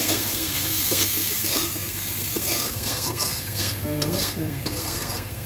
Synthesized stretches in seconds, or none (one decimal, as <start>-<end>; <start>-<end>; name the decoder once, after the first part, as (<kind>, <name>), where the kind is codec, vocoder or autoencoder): 0.0-5.5 (codec, SNAC)

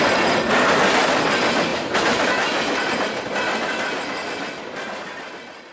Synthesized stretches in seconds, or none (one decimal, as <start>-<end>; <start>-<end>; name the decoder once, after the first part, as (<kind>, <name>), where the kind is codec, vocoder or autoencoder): none

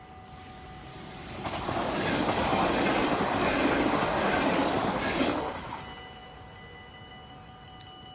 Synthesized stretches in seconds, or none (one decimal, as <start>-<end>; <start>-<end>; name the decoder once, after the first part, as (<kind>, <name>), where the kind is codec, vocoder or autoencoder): 0.9-5.7 (codec, DAC)

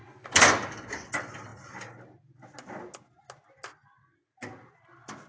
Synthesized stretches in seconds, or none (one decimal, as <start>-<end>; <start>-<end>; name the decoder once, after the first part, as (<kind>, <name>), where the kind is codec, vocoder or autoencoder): none

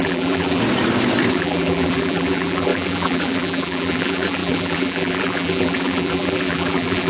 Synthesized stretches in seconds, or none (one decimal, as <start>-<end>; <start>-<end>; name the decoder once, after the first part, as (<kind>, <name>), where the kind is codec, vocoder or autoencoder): 0.0-0.6 (vocoder, BigVGAN v2); 1.3-7.1

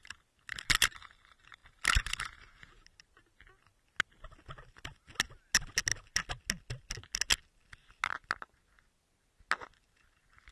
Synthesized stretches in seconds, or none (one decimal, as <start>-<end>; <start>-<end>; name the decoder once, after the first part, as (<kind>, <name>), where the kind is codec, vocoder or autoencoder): none

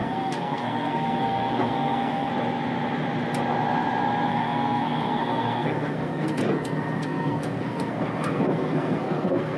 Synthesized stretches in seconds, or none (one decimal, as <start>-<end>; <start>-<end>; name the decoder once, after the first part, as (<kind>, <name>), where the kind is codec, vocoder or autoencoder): 0.0-2.3 (codec, SNAC); 4.3-9.6

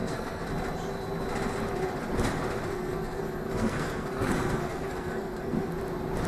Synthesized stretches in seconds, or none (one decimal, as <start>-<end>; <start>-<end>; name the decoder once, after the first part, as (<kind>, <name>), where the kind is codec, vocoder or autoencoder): 0.0-0.5 (codec, SNAC); 2.7-5.7